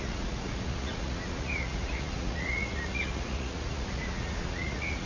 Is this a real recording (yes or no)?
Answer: no